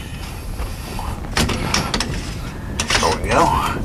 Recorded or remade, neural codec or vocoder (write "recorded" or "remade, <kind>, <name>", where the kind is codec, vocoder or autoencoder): recorded